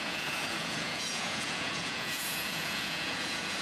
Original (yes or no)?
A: no